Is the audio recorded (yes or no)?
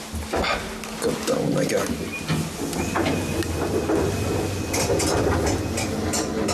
yes